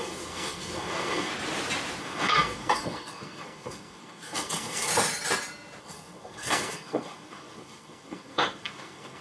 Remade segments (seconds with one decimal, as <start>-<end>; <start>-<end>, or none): 0.0-1.3; 2.0-4.9; 5.8-9.2